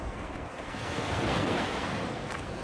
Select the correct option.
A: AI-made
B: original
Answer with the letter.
A